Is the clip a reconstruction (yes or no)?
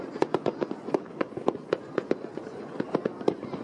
yes